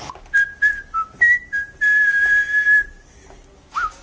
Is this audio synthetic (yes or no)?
no